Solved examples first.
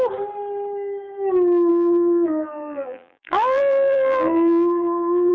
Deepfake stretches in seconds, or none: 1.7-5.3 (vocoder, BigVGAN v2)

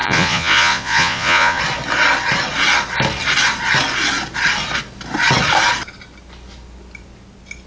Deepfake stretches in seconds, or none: 0.0-1.6 (vocoder, Vocos)

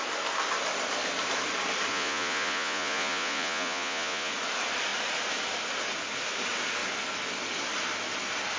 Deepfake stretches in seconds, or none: 1.9-4.3 (vocoder, Vocos)

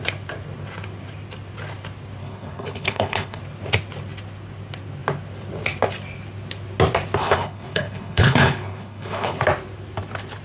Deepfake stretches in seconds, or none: 2.2-3.4 (codec, HILCodec); 7.2-9.4

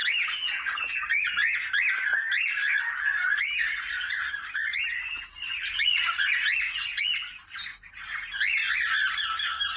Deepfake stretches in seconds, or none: 5.6-7.1 (vocoder, Vocos)

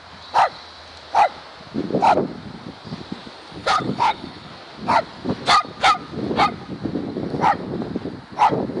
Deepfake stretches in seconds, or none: 3.6-4.5 (codec, HILCodec)

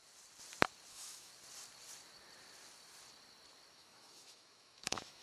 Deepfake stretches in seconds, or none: 0.9-1.3 (autoencoder, DAC-VAE); 3.7-5.2

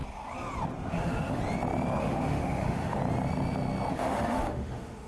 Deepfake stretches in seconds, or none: 0.9-1.4 (autoencoder, DAC-VAE); 2.0-3.0; 3.9-5.1